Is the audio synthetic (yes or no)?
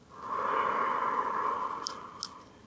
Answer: no